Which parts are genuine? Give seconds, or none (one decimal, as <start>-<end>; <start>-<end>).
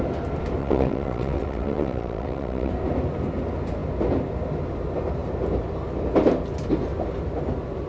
0.0-0.6; 2.7-7.9